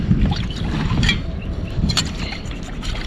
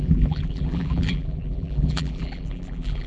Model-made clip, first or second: second